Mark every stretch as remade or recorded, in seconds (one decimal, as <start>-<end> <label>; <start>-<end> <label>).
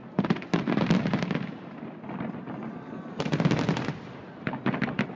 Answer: 0.0-5.2 recorded